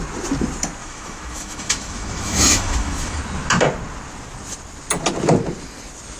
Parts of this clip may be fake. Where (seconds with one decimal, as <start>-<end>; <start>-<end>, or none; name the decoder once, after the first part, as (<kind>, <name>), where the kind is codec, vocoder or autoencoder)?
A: 0.8-3.2 (autoencoder, DAC-VAE)